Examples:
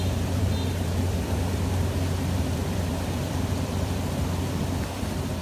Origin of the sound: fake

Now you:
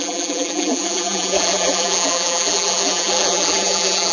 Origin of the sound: fake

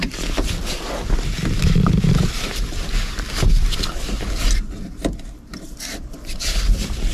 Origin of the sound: fake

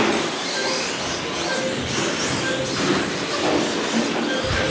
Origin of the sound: real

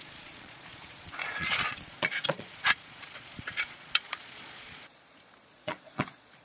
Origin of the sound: fake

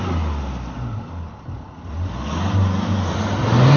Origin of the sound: real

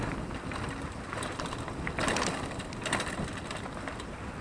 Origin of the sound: real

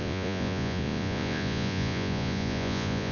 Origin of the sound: fake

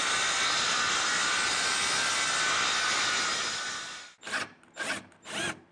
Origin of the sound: real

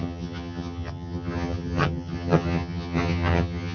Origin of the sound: fake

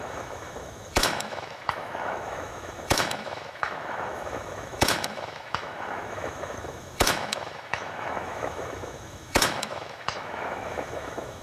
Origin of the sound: fake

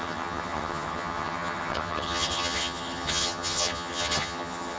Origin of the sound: fake